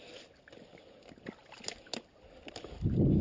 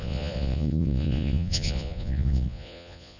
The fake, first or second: second